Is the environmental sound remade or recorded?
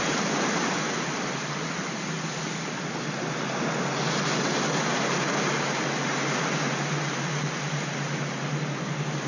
recorded